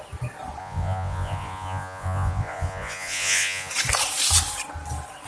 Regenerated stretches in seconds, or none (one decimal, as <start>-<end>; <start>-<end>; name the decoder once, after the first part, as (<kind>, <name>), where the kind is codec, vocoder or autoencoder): 0.6-3.7 (vocoder, Vocos)